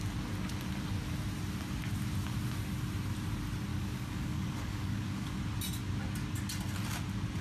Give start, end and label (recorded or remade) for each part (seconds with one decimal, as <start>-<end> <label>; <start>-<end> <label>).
0.0-3.7 recorded; 3.7-5.4 remade; 5.4-7.4 recorded